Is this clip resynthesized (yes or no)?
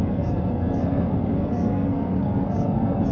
yes